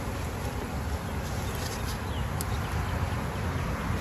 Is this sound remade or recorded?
recorded